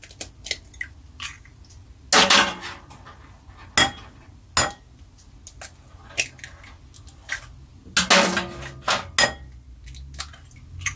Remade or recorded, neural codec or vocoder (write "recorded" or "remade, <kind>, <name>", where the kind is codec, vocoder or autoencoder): recorded